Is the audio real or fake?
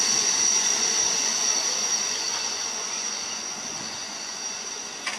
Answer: fake